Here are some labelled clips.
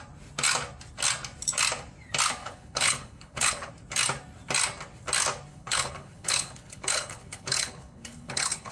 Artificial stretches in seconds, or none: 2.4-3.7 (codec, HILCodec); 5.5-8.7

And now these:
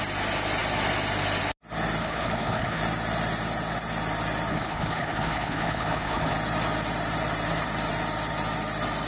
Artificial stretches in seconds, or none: 2.0-2.8 (codec, HILCodec); 4.5-6.3